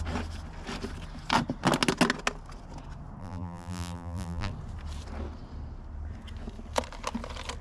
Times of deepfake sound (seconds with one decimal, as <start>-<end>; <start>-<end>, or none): 3.2-4.5